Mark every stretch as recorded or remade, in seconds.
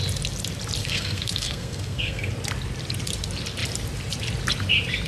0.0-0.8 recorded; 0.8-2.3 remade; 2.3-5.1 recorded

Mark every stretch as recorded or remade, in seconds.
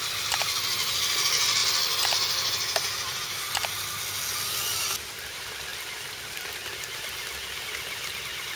0.0-8.6 recorded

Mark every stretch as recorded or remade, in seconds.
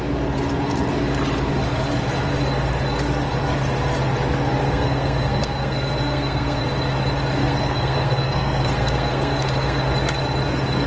0.0-4.6 recorded; 4.6-6.6 remade; 6.6-7.4 recorded; 7.4-9.8 remade; 9.8-10.9 recorded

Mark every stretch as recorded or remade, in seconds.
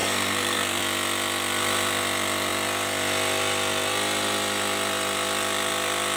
0.0-0.8 remade; 0.8-6.2 recorded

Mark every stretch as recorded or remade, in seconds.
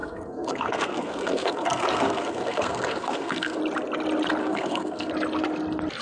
0.0-3.6 remade; 3.6-4.4 recorded; 4.4-5.1 remade; 5.1-6.0 recorded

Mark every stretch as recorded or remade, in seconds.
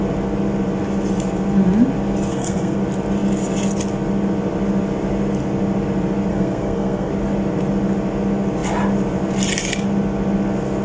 0.0-2.3 recorded; 2.3-2.8 remade; 2.8-6.3 recorded; 6.3-7.1 remade; 7.1-10.8 recorded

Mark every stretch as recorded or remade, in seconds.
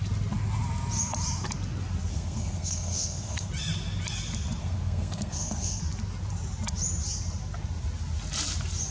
0.0-2.1 recorded; 2.1-3.5 remade; 3.5-4.6 recorded; 4.6-5.8 remade; 5.8-8.9 recorded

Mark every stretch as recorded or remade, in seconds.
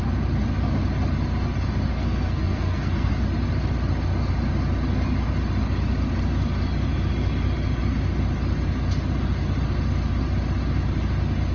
0.0-1.9 recorded; 1.9-3.1 remade; 3.1-11.5 recorded